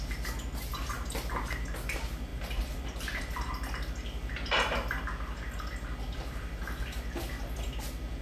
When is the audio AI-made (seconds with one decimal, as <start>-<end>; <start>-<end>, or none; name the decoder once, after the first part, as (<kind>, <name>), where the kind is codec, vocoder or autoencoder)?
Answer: none